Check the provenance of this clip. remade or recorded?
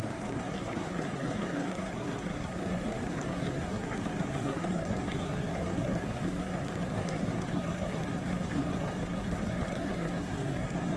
remade